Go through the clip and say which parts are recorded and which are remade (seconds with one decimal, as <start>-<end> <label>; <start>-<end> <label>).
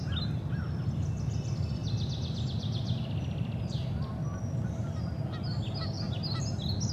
0.0-1.8 recorded; 1.8-3.6 remade; 3.6-6.9 recorded